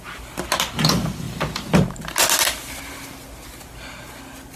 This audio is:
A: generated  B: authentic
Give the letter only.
B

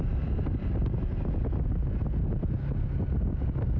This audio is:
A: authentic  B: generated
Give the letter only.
A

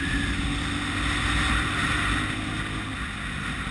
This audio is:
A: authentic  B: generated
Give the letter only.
A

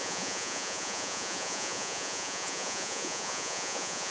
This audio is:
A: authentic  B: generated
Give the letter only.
B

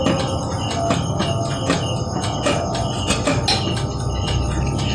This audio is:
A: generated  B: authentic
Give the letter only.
B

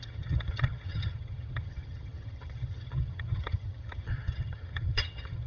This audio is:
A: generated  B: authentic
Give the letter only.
A